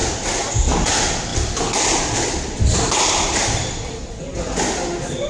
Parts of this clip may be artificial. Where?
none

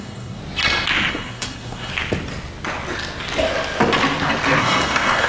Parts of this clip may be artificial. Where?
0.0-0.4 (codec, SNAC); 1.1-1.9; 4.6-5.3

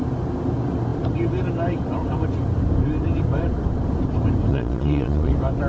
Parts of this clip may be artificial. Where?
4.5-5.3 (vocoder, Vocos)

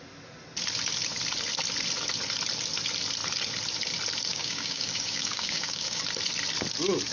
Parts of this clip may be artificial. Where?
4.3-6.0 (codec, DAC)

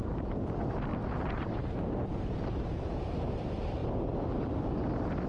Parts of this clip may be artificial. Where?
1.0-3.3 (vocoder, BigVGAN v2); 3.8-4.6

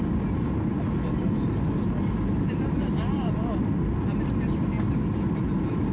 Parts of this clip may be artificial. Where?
0.7-4.2 (vocoder, BigVGAN v2)

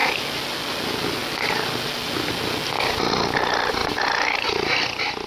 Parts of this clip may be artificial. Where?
3.8-4.5 (vocoder, BigVGAN v2)

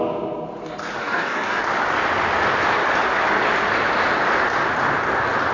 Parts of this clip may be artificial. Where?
1.0-1.6 (codec, DAC)